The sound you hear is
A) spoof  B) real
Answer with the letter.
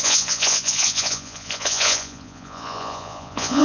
A